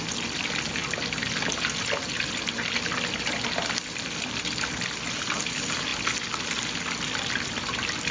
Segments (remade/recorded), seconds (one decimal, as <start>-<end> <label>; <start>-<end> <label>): 0.0-8.1 recorded